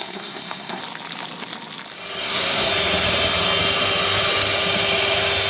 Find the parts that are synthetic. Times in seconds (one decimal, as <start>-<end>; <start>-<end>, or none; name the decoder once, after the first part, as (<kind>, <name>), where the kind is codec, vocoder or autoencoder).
0.0-0.8 (codec, SNAC); 2.2-2.7